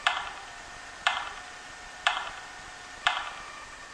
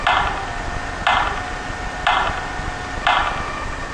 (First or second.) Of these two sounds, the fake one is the first